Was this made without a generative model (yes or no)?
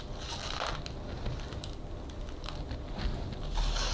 yes